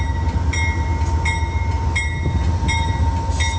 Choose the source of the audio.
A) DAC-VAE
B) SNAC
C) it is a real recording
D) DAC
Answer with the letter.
C